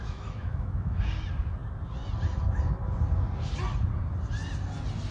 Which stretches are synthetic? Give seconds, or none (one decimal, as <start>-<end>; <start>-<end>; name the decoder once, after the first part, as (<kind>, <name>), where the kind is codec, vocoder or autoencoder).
0.0-1.0 (autoencoder, DAC-VAE)